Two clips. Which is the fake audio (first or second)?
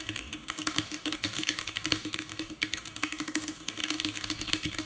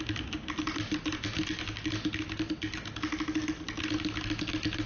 first